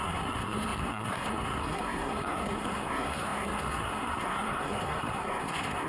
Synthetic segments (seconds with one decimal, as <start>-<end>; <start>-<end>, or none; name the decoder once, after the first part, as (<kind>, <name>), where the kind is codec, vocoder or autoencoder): 0.0-5.9 (codec, SNAC)